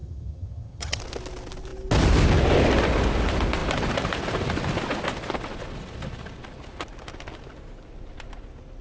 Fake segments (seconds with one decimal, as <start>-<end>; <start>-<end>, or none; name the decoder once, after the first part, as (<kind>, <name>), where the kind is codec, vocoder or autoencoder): 0.0-1.0 (vocoder, HiFi-GAN)

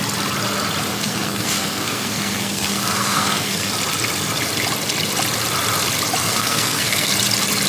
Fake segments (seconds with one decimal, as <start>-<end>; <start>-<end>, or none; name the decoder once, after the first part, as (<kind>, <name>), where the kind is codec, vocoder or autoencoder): 0.9-3.7 (codec, SNAC); 6.2-7.1

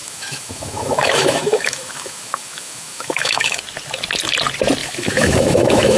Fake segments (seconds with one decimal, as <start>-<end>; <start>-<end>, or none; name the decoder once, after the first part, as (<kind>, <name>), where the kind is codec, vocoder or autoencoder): 0.0-3.6 (autoencoder, DAC-VAE); 4.8-6.0

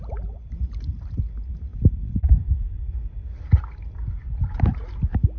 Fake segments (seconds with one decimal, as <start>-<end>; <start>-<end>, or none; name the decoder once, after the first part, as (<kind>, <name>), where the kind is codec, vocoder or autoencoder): none

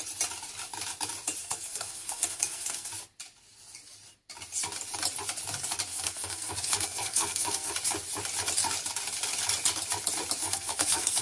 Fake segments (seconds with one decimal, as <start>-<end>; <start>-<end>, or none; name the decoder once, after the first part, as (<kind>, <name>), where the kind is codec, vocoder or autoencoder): 1.4-2.9 (codec, SNAC); 5.9-7.7; 10.4-11.2